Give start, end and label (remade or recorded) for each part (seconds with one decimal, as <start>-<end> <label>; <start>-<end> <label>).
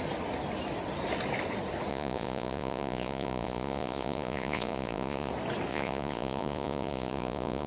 0.0-1.9 recorded; 1.9-5.3 remade; 5.3-5.7 recorded; 5.7-7.7 remade